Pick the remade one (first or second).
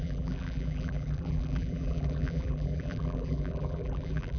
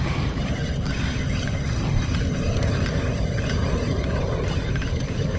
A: first